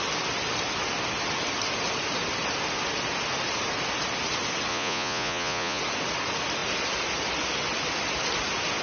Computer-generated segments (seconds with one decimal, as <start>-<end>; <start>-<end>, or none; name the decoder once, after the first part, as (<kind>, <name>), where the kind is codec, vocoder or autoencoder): 4.7-5.8 (vocoder, Vocos)